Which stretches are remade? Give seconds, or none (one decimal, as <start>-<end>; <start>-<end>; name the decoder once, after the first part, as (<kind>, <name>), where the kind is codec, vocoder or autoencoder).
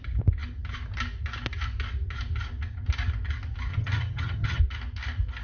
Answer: 3.7-4.6 (vocoder, HiFi-GAN)